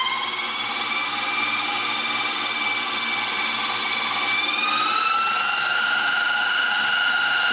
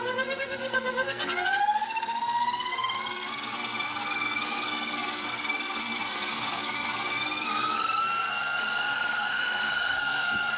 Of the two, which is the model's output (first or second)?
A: second